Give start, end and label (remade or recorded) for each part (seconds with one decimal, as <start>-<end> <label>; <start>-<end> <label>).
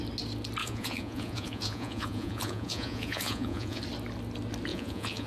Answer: 0.0-0.6 recorded; 0.6-3.8 remade; 3.8-4.7 recorded; 4.7-5.3 remade